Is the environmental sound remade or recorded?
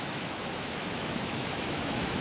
remade